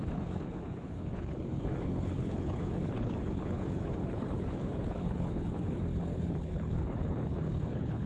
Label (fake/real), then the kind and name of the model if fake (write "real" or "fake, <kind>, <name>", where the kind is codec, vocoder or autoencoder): fake, codec, HILCodec